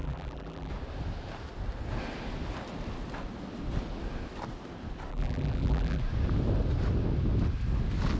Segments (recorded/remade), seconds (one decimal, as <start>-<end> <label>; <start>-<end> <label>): 0.0-0.7 remade; 0.7-5.1 recorded; 5.1-6.0 remade; 6.0-8.2 recorded